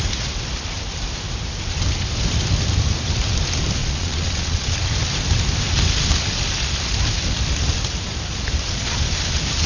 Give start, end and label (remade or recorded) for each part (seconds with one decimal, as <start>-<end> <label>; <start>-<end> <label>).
0.0-3.8 recorded; 3.8-4.8 remade; 4.8-9.7 recorded